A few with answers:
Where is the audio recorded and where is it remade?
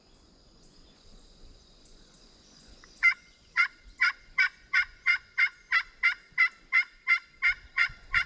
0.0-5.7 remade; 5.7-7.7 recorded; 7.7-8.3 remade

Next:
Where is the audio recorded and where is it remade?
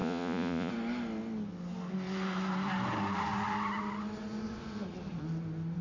0.0-0.7 remade; 0.7-5.8 recorded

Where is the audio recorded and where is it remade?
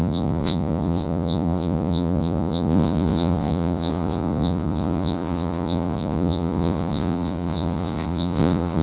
0.0-8.8 remade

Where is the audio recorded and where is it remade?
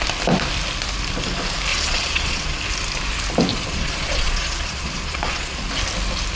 0.0-1.7 recorded; 1.7-2.6 remade; 2.6-3.5 recorded; 3.5-5.6 remade; 5.6-6.4 recorded